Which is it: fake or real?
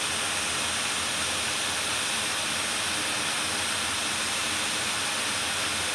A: real